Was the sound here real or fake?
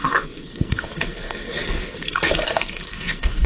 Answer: fake